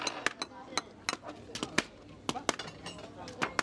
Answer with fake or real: real